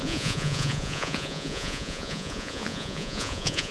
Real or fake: fake